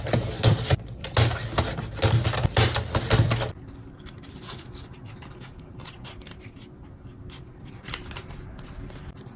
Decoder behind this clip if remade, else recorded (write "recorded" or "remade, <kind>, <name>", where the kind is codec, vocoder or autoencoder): recorded